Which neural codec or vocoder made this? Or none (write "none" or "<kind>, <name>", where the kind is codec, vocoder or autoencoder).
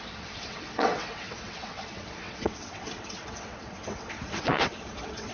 vocoder, WaveNeXt